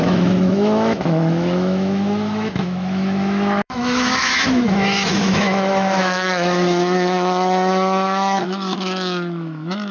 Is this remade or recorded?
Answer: remade